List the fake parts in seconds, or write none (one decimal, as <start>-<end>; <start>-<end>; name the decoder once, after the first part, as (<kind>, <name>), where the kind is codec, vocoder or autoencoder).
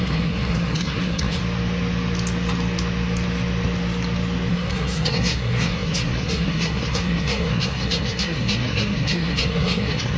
0.0-1.4 (codec, SNAC); 4.5-10.2